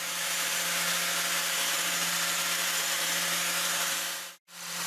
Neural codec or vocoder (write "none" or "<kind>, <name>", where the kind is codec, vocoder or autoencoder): vocoder, BigVGAN v2